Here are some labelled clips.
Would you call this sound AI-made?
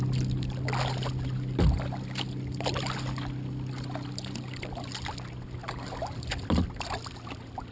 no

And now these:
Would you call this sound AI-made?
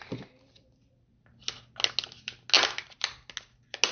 no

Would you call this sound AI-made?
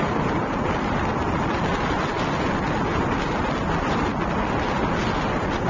no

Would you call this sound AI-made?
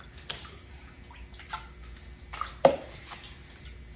no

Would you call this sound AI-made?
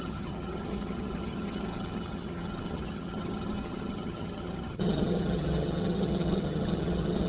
yes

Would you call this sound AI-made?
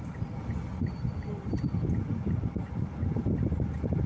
no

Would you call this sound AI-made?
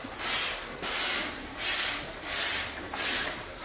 no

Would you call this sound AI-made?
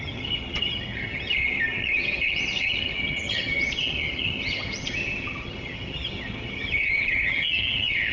yes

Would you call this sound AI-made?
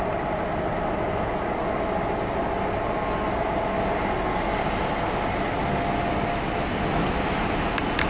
no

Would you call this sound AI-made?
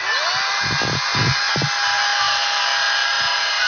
no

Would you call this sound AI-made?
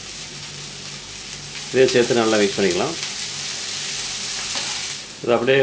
no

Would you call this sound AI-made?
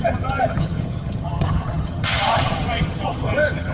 yes